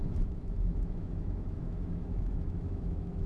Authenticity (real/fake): fake